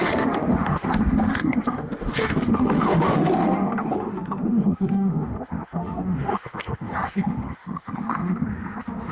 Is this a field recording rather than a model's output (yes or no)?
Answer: no